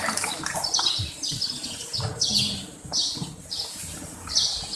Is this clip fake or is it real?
real